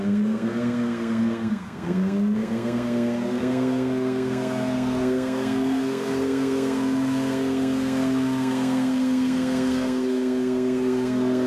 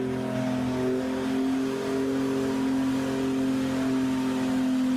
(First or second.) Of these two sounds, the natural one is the second